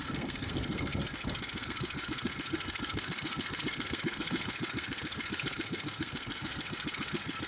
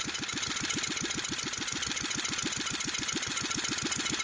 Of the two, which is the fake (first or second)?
first